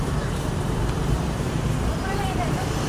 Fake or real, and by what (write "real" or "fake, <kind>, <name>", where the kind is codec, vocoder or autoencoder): fake, vocoder, BigVGAN v2